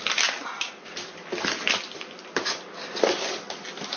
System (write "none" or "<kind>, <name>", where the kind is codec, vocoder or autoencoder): none